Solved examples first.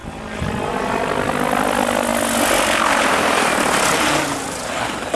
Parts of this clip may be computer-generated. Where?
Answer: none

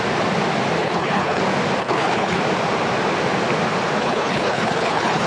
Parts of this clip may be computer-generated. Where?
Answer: 0.8-1.4 (codec, HILCodec); 1.8-2.4; 4.0-5.3

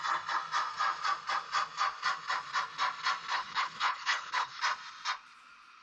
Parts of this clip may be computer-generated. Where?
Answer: 3.3-4.6 (codec, HILCodec)

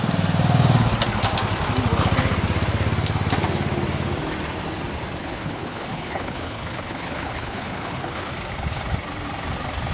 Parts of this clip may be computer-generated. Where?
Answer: 5.2-8.3 (codec, HILCodec)